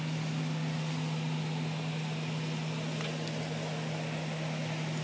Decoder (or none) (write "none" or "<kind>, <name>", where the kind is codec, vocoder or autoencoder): none